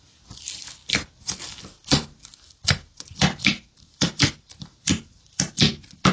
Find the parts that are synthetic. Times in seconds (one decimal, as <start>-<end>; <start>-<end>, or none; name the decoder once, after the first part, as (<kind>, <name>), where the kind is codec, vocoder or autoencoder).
3.4-5.5 (vocoder, BigVGAN v2)